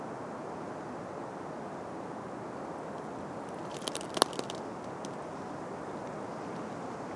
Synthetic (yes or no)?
no